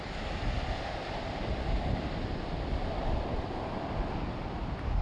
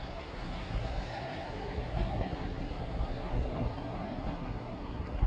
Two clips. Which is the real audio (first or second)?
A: first